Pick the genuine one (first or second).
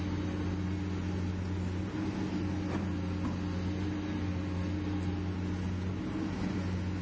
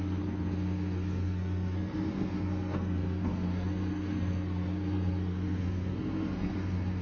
first